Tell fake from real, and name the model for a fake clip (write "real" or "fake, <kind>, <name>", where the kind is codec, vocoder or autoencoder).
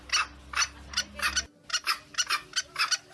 real